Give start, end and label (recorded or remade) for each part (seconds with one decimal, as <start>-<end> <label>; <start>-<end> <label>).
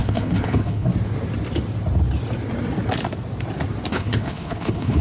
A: 0.0-0.9 remade; 0.9-3.9 recorded; 3.9-5.0 remade